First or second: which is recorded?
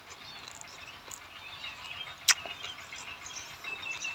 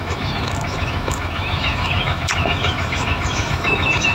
first